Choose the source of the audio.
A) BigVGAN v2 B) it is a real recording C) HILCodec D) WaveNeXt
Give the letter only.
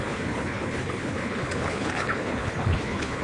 C